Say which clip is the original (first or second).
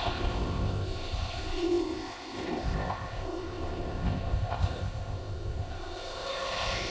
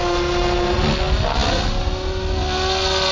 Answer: second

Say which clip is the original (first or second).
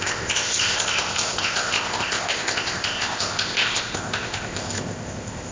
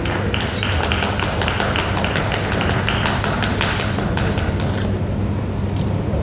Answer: second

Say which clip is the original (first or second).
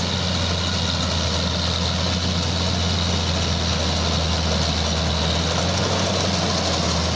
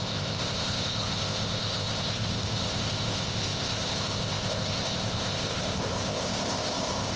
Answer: first